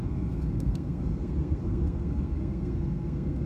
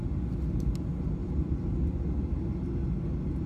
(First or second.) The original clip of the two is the second